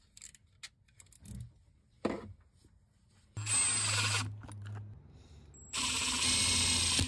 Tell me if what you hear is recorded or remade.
recorded